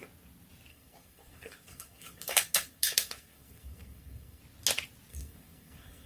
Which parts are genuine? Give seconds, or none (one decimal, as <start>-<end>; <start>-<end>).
0.0-0.7; 4.4-5.1